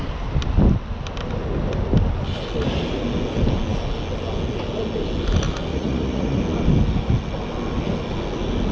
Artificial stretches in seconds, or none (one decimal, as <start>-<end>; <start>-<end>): 5.7-6.4